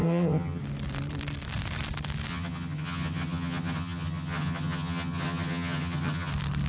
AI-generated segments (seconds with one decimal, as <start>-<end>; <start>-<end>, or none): 0.0-0.6; 2.3-6.3